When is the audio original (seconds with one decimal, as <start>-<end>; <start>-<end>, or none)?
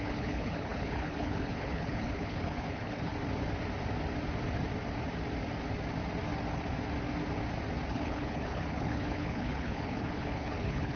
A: 3.1-7.9